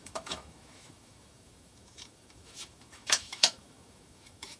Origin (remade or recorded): remade